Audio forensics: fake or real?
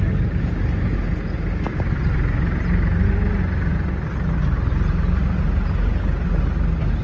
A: real